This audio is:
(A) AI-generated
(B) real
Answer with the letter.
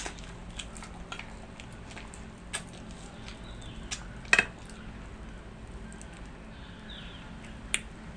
B